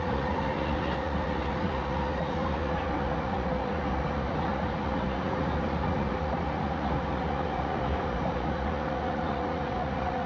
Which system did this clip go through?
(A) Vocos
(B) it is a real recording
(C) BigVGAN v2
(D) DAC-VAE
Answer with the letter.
A